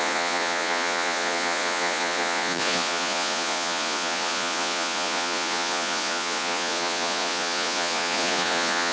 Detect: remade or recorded remade